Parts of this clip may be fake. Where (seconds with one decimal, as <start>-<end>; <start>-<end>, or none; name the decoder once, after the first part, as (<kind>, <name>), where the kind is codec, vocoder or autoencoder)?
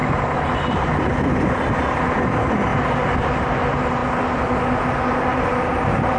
0.0-0.5 (vocoder, BigVGAN v2); 5.3-6.2